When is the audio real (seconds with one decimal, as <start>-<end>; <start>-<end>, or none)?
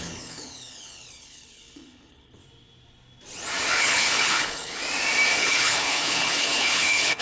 2.4-3.7; 4.8-5.4